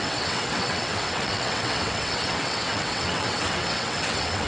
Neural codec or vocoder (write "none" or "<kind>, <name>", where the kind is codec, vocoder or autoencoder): vocoder, WaveNeXt